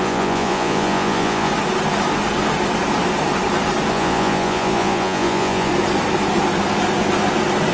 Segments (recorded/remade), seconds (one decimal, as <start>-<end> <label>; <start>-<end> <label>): 0.0-1.5 remade; 1.5-3.9 recorded; 3.9-5.7 remade; 5.7-7.7 recorded